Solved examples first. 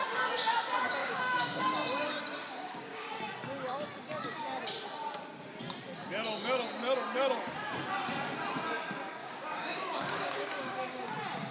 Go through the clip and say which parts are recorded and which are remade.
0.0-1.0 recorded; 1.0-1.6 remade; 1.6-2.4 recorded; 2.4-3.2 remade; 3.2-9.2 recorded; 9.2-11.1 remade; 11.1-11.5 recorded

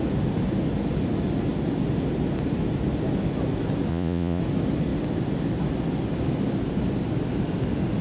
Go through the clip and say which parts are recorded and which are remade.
0.0-3.9 recorded; 3.9-4.4 remade; 4.4-8.0 recorded

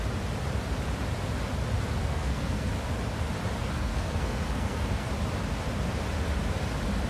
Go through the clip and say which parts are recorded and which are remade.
0.0-2.0 recorded; 2.0-2.7 remade; 2.7-3.6 recorded; 3.6-5.1 remade; 5.1-7.1 recorded

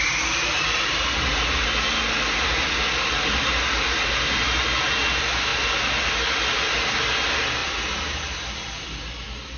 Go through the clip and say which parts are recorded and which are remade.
0.0-9.6 recorded